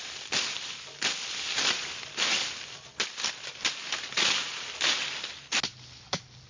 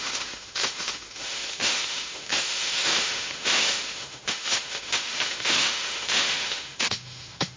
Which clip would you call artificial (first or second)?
second